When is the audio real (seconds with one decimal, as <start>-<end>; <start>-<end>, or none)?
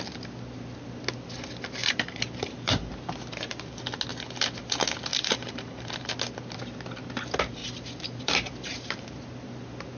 0.0-1.8; 2.9-5.1; 6.1-7.6; 9.2-10.0